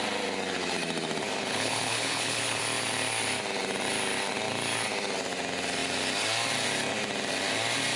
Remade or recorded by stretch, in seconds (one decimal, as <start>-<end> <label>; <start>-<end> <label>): 0.0-1.4 recorded; 1.4-2.6 remade; 2.6-8.0 recorded